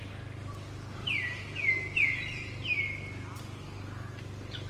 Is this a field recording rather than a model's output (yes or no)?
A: yes